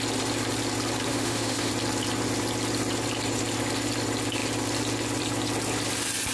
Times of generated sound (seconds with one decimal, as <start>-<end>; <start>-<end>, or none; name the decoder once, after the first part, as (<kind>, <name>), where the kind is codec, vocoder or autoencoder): 1.1-1.7 (autoencoder, DAC-VAE)